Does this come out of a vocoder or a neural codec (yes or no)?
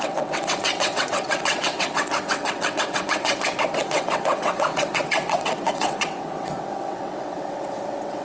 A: yes